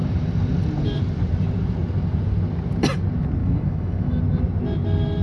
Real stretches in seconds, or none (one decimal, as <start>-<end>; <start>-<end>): 0.0-3.4; 4.2-5.2